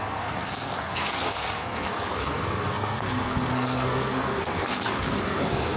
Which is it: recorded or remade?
remade